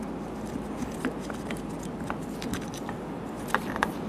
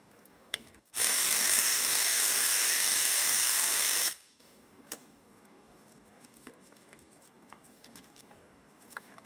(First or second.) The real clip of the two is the first